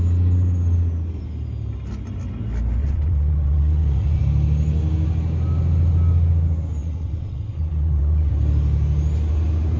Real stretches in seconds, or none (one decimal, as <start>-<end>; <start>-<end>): 0.0-2.8; 4.2-6.8; 8.3-9.8